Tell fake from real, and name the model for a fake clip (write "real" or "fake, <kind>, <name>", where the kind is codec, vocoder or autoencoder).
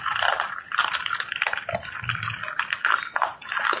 real